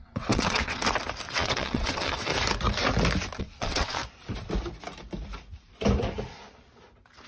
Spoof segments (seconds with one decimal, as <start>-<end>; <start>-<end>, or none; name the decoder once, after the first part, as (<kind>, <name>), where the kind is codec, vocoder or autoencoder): 0.0-0.8 (vocoder, WaveNeXt); 1.3-2.3; 3.4-4.0